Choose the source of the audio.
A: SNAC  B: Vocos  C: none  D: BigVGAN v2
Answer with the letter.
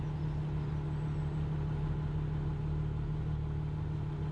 C